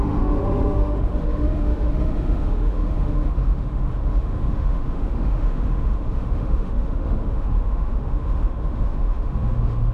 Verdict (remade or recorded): remade